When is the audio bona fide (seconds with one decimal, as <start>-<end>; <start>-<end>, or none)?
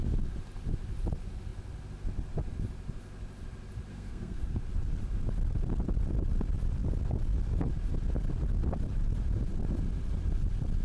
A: 0.0-3.9; 4.6-10.8